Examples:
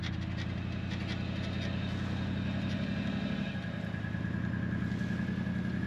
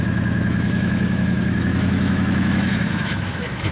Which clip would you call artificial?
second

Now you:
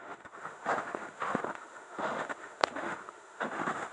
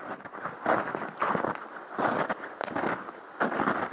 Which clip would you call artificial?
first